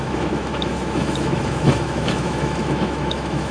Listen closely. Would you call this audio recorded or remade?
remade